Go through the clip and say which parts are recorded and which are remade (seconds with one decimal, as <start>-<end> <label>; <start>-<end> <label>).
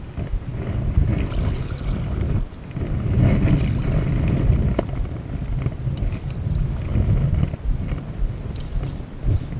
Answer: 0.0-9.6 recorded